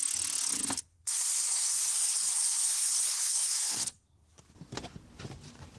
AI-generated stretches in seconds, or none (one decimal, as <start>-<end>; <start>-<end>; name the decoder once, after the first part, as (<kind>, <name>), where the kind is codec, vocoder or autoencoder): 0.9-4.4 (codec, SNAC)